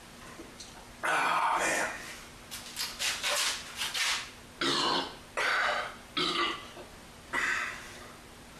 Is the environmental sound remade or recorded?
recorded